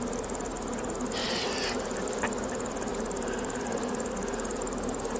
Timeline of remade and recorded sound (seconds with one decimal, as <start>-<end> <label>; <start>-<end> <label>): 0.0-1.2 recorded; 1.2-2.2 remade; 2.2-2.9 recorded; 2.9-5.2 remade